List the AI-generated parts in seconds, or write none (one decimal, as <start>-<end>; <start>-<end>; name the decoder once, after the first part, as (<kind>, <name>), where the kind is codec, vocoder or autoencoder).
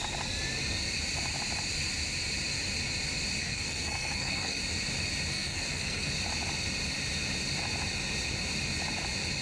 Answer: 3.4-4.6 (codec, SNAC); 5.3-6.1